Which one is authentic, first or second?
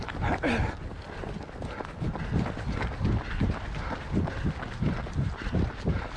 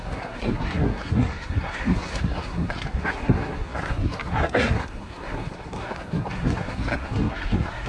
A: first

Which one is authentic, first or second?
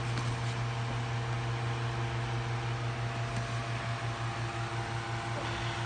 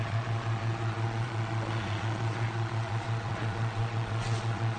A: first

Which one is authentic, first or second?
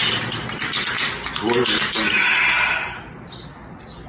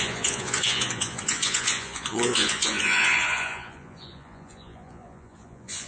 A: first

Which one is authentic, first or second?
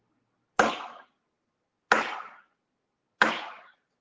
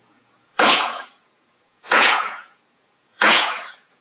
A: first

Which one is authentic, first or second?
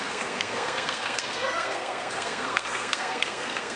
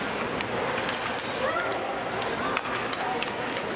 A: second